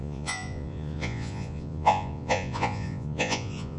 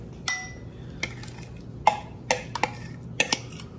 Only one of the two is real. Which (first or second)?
second